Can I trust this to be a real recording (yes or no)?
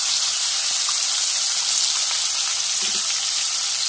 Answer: yes